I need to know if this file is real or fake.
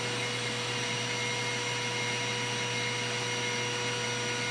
real